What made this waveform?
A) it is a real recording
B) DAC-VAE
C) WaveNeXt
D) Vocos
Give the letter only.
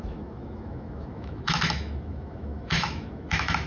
B